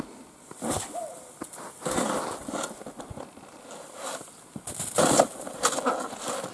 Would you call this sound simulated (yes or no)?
no